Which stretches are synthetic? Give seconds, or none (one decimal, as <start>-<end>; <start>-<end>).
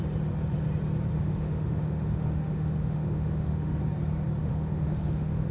1.1-3.8; 4.4-5.5